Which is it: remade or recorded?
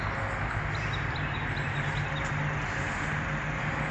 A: recorded